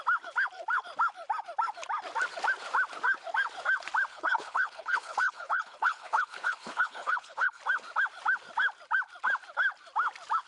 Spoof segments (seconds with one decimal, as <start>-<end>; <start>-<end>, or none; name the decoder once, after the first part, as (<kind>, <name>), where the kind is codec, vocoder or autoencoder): 4.1-7.6 (codec, HILCodec)